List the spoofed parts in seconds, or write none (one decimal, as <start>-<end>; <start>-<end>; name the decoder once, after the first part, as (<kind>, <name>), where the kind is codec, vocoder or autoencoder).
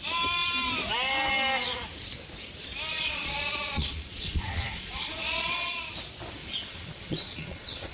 2.9-5.9 (vocoder, Vocos); 6.4-7.9